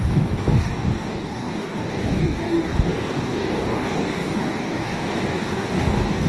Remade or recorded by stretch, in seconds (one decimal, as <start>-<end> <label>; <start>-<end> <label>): 0.0-6.3 remade